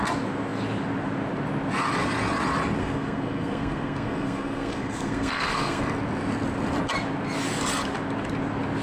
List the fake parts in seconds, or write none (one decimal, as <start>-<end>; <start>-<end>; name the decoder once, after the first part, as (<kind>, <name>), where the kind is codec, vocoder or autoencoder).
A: 2.8-5.8 (codec, SNAC)